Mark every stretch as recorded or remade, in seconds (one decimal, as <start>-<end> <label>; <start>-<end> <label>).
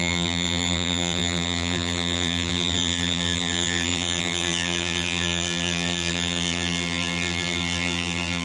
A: 0.0-8.4 remade